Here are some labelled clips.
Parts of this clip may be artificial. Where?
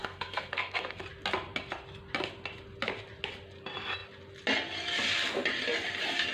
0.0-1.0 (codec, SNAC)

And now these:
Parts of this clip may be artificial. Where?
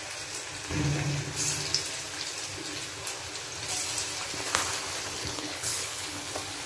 5.2-6.3 (codec, HILCodec)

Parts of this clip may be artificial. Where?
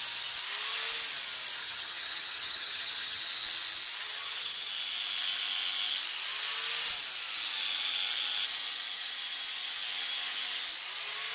1.6-3.2 (vocoder, HiFi-GAN); 4.0-4.7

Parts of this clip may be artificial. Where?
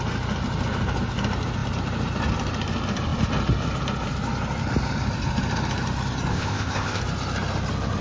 6.3-7.0 (codec, ZipCodec)